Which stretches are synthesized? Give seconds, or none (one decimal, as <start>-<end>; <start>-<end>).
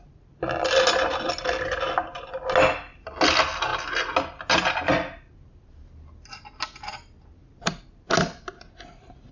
none